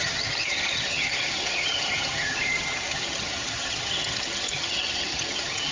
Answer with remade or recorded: remade